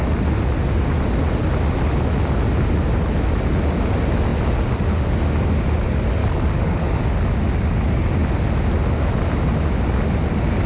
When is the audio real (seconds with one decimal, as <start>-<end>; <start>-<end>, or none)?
0.0-6.2; 7.0-10.7